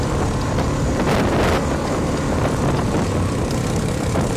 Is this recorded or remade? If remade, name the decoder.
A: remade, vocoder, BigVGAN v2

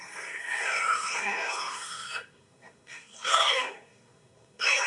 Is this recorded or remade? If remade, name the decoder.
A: remade, codec, SNAC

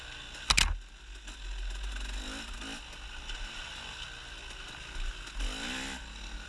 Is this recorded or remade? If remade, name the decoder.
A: recorded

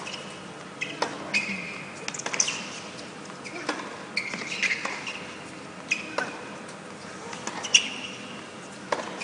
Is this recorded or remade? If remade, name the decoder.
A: recorded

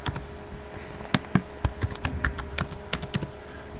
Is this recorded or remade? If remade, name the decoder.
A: recorded